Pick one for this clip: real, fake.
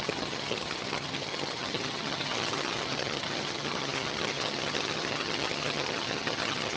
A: fake